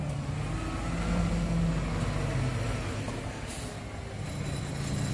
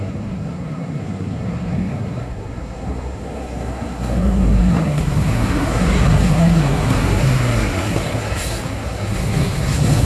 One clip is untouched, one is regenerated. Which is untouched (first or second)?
first